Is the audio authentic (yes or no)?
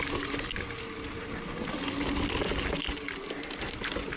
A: yes